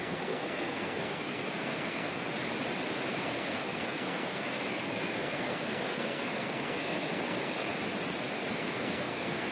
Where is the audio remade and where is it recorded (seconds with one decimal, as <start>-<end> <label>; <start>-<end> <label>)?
0.0-2.3 remade; 2.3-3.1 recorded; 3.1-7.7 remade; 7.7-8.5 recorded; 8.5-9.5 remade

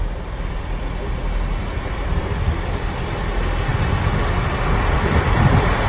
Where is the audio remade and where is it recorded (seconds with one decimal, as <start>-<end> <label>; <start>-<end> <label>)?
0.0-3.7 remade; 3.7-5.9 recorded

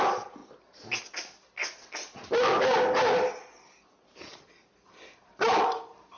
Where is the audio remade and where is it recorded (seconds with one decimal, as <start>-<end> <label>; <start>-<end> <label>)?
0.0-6.2 recorded

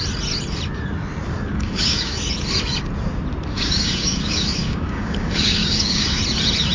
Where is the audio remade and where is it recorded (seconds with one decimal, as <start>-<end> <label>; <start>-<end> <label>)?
0.0-1.5 recorded; 1.5-2.2 remade; 2.2-3.5 recorded; 3.5-6.2 remade; 6.2-6.7 recorded

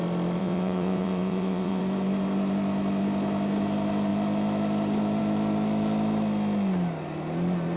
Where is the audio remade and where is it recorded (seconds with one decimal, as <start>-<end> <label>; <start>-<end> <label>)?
0.0-0.4 recorded; 0.4-1.8 remade; 1.8-7.8 recorded

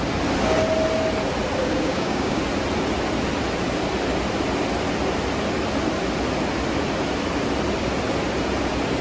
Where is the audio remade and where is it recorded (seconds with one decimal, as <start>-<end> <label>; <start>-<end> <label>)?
0.0-1.6 recorded; 1.6-2.4 remade; 2.4-9.0 recorded

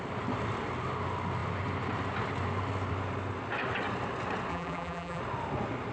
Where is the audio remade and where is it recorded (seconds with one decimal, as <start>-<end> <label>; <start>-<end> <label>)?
0.0-4.5 recorded; 4.5-5.2 remade; 5.2-5.9 recorded